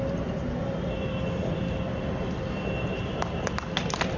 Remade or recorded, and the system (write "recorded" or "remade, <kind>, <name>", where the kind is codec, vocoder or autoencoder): recorded